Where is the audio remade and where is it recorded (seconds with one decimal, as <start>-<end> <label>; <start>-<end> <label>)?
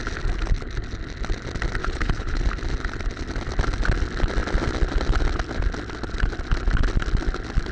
0.0-1.8 recorded; 1.8-2.4 remade; 2.4-7.7 recorded